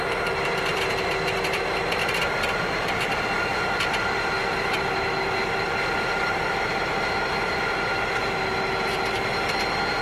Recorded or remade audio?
remade